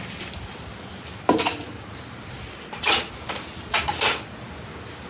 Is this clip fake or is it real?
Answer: real